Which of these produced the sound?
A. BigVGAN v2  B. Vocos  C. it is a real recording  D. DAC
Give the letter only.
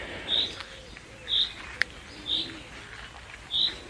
C